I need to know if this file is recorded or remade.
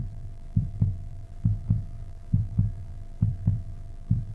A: remade